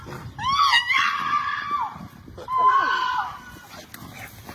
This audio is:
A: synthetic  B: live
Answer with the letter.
B